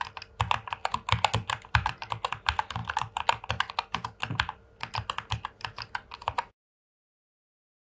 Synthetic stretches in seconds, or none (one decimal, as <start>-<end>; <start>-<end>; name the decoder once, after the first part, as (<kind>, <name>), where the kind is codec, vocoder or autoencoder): none